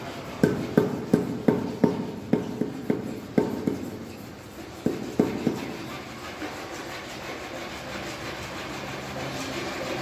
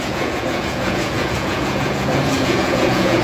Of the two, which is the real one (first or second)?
first